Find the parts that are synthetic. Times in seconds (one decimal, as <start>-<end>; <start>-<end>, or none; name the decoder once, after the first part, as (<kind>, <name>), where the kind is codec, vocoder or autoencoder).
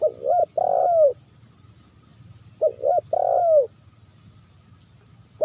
none